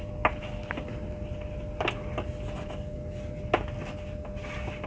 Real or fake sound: real